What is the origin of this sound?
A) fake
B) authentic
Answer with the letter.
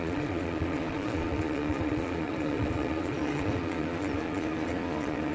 A